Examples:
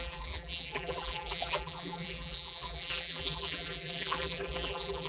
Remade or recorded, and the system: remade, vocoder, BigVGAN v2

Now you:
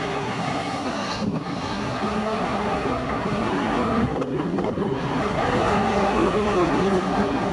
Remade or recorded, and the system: remade, codec, SNAC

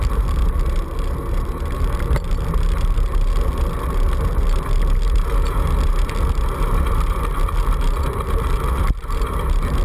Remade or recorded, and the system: recorded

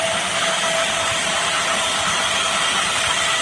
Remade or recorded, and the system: recorded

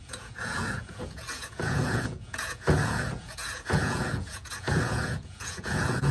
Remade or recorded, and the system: remade, vocoder, Vocos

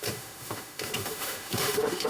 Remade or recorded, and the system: remade, autoencoder, DAC-VAE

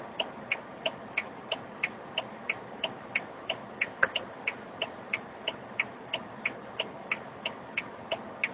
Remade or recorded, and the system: recorded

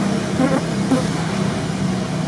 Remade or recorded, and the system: recorded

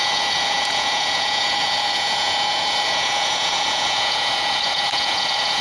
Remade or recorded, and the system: remade, vocoder, Vocos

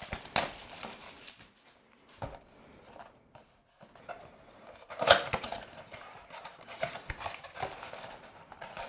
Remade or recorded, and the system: recorded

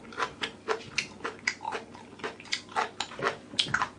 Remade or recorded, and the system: recorded